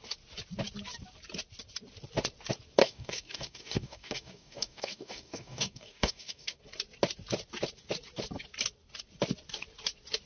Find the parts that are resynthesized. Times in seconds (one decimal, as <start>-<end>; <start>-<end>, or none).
2.8-6.6